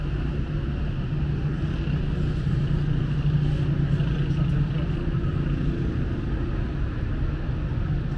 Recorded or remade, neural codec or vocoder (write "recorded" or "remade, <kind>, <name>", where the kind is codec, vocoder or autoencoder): recorded